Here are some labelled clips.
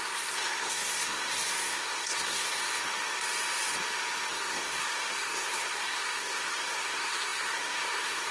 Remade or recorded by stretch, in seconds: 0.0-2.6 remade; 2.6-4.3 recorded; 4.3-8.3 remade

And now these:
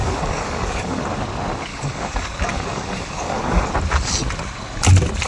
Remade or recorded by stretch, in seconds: 0.0-1.0 remade; 1.0-1.7 recorded; 1.7-3.7 remade; 3.7-5.3 recorded

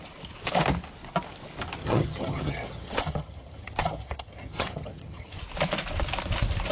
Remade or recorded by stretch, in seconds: 0.0-1.8 recorded; 1.8-5.4 remade; 5.4-6.7 recorded

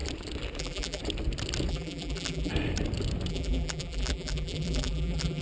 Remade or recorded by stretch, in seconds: 0.0-0.6 recorded; 0.6-1.0 remade; 1.0-1.7 recorded; 1.7-2.5 remade; 2.5-3.3 recorded; 3.3-5.4 remade

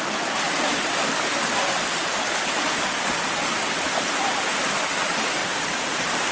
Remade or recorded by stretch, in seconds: 0.0-6.3 recorded